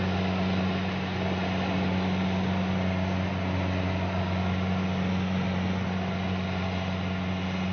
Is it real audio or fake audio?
real